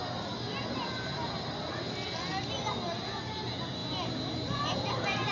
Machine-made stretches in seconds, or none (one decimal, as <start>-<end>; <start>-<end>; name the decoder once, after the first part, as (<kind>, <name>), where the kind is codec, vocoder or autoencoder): none